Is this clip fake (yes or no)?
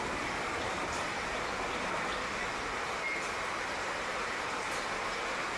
no